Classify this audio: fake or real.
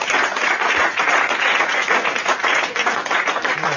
fake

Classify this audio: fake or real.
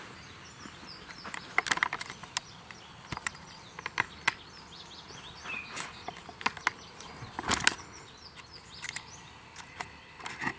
real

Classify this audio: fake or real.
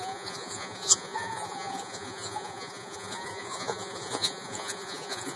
fake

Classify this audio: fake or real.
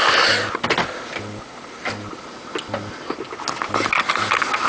real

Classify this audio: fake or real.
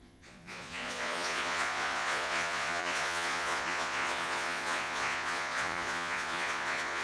fake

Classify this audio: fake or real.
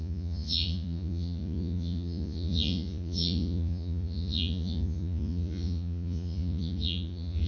fake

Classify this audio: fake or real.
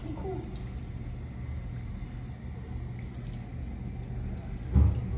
real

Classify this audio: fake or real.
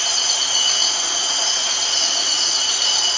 fake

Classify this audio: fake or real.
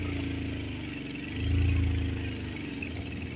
real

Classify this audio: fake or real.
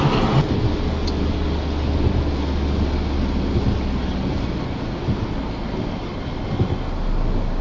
real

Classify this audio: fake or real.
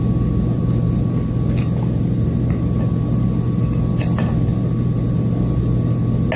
real